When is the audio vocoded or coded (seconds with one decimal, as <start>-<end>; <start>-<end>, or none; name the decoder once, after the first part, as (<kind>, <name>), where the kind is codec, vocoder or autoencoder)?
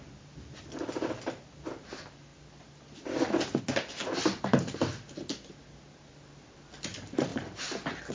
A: none